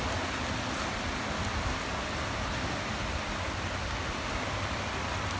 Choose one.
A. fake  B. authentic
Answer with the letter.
B